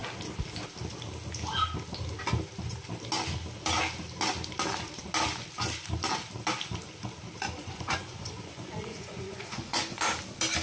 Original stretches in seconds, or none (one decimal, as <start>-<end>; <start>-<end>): 0.0-7.6; 10.0-10.6